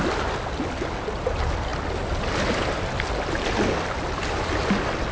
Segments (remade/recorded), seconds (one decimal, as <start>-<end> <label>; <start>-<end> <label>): 0.0-5.1 recorded